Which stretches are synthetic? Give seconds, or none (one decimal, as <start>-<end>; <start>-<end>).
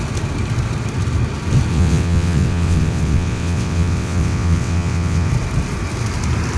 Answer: 1.7-5.3